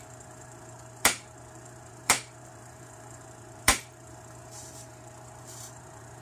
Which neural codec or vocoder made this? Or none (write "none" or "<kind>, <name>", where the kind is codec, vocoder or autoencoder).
vocoder, BigVGAN v2